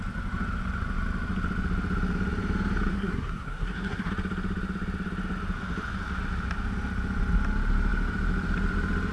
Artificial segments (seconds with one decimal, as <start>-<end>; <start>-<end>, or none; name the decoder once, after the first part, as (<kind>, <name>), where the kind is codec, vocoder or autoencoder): 2.9-4.1 (codec, SNAC)